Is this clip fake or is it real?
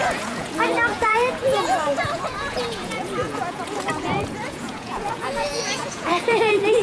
fake